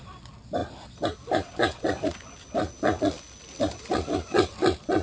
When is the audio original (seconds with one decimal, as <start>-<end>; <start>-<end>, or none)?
0.0-5.0